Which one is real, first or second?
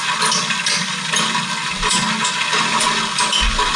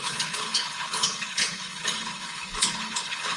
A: first